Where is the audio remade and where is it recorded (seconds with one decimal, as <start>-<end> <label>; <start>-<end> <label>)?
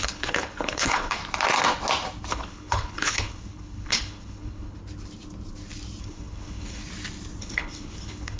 0.0-1.2 remade; 1.2-2.3 recorded; 2.3-4.8 remade; 4.8-6.0 recorded; 6.0-6.8 remade; 6.8-7.4 recorded; 7.4-8.4 remade